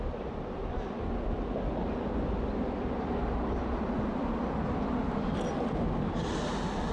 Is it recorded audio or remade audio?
recorded